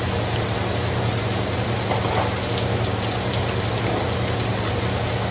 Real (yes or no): yes